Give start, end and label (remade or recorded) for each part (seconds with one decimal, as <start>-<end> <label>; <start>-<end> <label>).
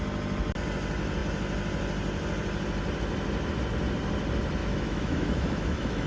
0.0-4.6 recorded; 4.6-6.1 remade